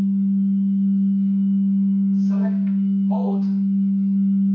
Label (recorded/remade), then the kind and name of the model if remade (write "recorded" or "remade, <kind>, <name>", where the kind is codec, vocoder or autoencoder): remade, codec, SNAC